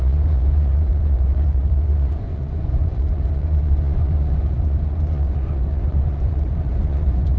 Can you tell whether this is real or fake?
fake